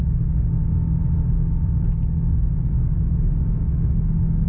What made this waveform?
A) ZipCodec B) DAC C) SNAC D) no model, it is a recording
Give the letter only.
D